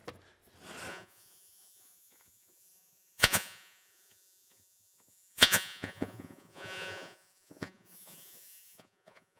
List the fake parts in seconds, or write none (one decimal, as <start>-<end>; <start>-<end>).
0.9-9.4